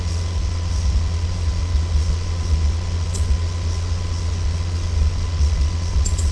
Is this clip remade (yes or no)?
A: yes